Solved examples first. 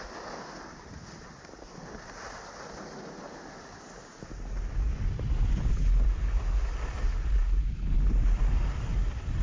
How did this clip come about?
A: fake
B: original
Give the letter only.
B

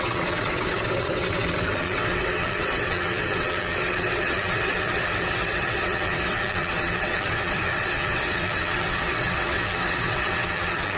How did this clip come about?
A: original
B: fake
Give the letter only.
B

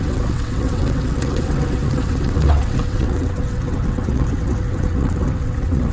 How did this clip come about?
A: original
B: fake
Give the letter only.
B